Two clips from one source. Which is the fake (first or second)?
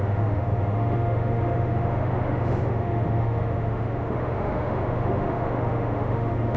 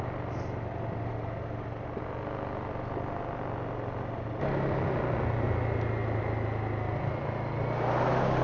first